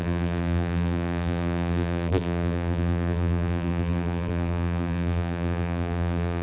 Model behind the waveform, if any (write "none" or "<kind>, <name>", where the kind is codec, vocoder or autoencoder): vocoder, BigVGAN v2